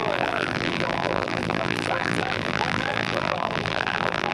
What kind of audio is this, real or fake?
fake